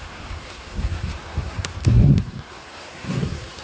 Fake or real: fake